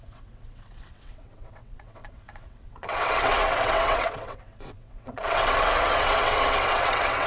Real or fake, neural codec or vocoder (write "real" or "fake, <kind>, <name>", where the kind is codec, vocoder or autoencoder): fake, vocoder, WaveNeXt